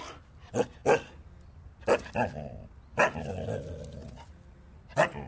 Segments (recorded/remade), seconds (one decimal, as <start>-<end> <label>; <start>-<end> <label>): 0.0-5.3 recorded